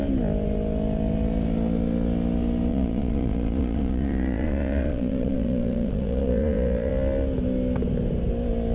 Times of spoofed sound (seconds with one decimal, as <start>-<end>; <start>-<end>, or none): 2.7-6.9